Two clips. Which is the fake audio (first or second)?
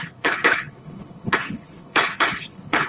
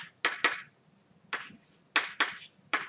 first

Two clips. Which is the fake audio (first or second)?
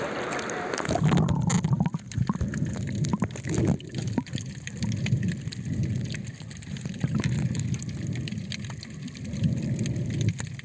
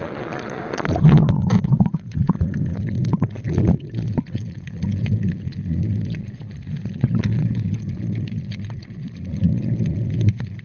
second